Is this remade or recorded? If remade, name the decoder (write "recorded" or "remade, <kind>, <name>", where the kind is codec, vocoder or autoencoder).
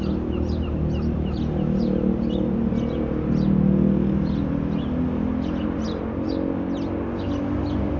recorded